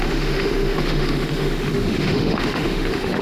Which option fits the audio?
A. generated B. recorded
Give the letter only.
A